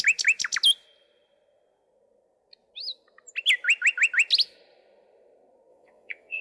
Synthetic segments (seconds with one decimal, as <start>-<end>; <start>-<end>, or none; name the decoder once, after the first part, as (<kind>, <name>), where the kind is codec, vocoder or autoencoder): 5.7-6.4 (vocoder, Vocos)